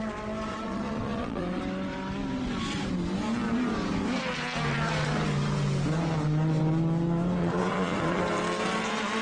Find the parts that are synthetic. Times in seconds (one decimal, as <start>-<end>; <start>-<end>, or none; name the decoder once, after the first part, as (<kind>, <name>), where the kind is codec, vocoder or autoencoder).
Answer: 0.5-1.6 (vocoder, Vocos); 7.4-8.2